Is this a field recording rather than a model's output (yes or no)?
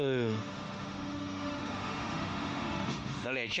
no